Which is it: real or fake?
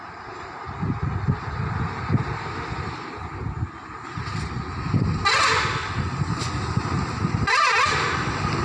real